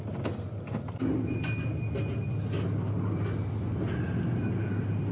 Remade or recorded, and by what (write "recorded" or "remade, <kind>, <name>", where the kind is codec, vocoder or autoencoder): recorded